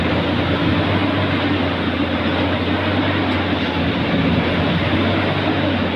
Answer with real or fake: real